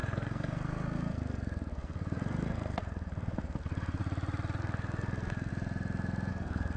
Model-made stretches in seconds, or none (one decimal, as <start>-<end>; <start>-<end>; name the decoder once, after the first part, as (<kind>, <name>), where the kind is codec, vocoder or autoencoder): 0.0-4.0 (codec, SNAC); 4.6-5.5; 6.3-6.8